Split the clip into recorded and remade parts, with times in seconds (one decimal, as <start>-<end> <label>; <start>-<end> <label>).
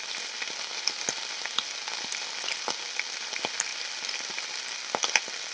0.0-5.5 recorded